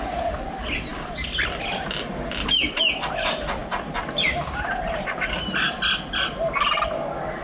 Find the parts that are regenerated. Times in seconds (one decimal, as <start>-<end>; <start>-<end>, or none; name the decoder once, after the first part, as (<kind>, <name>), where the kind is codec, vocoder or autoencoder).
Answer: none